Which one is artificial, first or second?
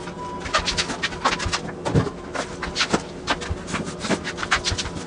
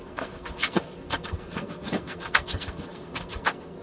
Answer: second